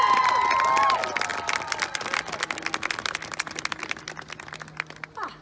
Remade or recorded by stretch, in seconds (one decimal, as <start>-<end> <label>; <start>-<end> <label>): 0.0-5.4 recorded